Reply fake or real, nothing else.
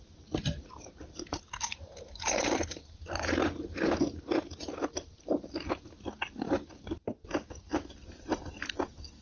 real